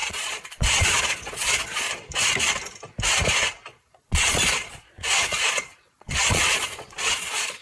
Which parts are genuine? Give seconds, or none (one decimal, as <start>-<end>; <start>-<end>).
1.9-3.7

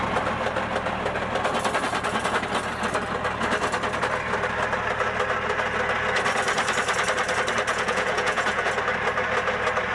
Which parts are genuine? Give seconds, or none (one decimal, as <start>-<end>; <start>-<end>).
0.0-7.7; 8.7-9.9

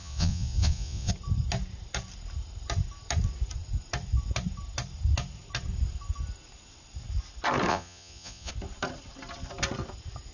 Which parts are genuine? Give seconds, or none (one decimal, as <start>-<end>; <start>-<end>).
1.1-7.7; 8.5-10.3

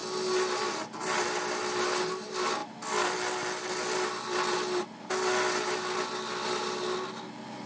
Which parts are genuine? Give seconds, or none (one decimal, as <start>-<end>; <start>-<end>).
0.0-7.7

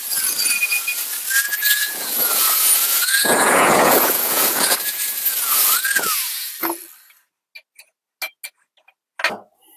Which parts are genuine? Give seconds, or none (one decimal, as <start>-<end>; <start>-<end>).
0.0-1.8; 6.5-9.8